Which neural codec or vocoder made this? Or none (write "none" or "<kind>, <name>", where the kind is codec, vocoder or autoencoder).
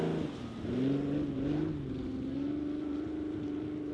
none